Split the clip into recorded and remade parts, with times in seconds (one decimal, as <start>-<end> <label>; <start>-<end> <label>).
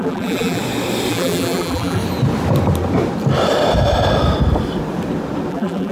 0.0-0.6 remade; 0.6-1.1 recorded; 1.1-2.0 remade; 2.0-5.5 recorded; 5.5-5.9 remade